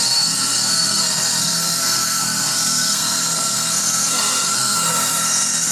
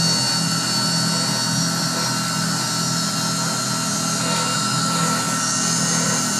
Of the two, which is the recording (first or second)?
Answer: second